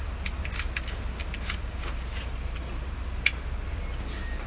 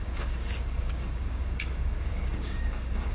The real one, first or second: first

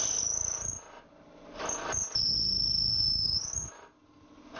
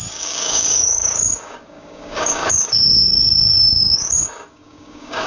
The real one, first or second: first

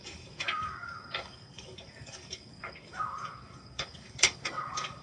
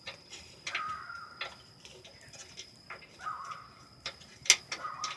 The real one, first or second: second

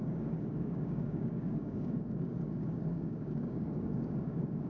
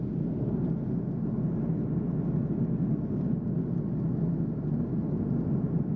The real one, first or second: second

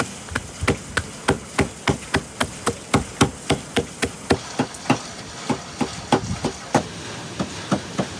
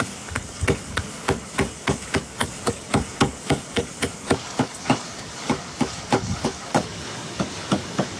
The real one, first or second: first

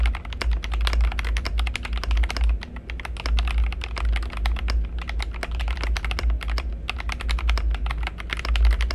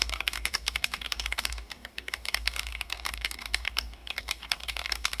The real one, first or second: first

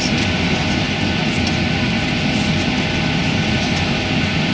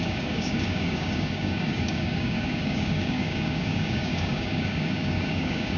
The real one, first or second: first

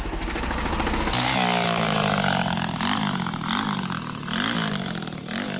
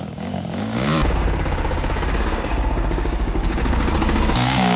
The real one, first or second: first